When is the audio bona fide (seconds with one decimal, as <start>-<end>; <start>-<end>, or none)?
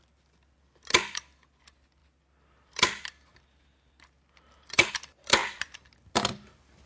0.0-6.9